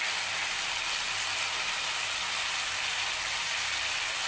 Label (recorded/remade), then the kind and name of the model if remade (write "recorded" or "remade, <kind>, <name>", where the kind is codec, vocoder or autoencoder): recorded